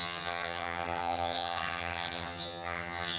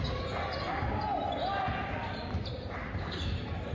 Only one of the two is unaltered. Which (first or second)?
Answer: second